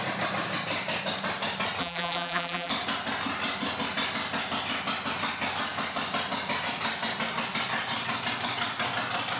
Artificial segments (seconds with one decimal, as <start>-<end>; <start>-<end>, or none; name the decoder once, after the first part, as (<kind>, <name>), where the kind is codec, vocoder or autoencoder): 1.8-2.7 (vocoder, BigVGAN v2)

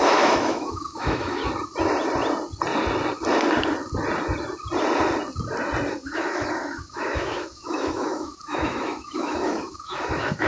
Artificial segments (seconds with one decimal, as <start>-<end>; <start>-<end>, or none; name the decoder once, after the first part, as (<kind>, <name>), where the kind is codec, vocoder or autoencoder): 0.0-1.4 (autoencoder, DAC-VAE); 5.9-10.5

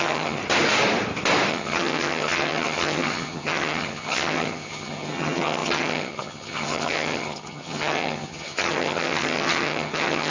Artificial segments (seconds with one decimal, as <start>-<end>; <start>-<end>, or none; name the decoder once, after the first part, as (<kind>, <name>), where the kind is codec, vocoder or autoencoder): 0.0-0.4 (vocoder, HiFi-GAN); 1.5-10.3

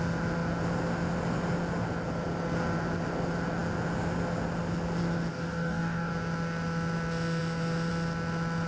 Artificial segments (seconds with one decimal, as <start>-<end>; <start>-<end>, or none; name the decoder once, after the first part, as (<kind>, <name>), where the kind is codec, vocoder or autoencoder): 5.3-6.1 (codec, DAC)

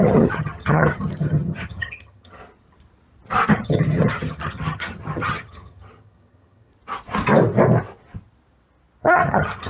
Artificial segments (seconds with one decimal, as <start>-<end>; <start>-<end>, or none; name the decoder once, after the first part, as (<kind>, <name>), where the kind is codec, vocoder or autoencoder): 0.0-2.4 (vocoder, HiFi-GAN); 3.5-6.7; 9.0-9.7